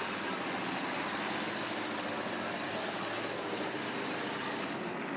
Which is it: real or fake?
real